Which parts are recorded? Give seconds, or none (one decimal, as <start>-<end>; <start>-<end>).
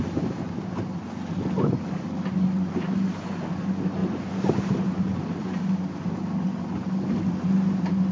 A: 0.0-8.1